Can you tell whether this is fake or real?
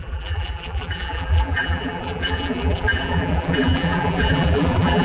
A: fake